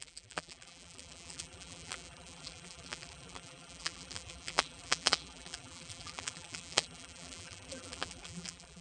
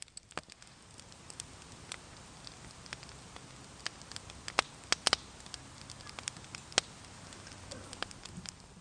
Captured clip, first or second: second